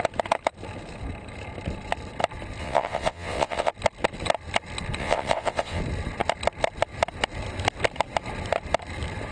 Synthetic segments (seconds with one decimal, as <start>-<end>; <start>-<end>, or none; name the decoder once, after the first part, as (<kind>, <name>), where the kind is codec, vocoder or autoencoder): 2.6-3.7 (vocoder, WaveNeXt); 5.0-5.8